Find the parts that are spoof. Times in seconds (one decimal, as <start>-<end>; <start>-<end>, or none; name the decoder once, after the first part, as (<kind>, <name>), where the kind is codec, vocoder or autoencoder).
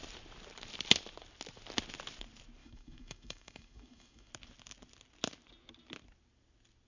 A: 2.6-4.3 (autoencoder, DAC-VAE)